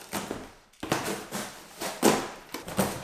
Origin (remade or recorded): recorded